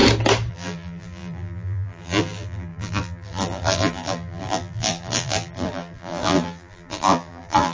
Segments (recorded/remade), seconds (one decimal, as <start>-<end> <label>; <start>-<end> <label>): 0.0-0.5 recorded; 0.5-7.7 remade